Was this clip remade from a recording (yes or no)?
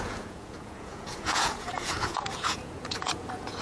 yes